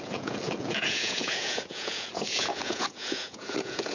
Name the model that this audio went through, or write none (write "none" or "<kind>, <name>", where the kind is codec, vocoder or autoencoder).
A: vocoder, Vocos